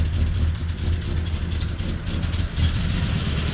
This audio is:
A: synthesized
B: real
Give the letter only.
B